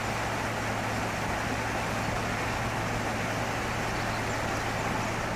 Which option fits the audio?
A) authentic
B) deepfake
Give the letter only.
A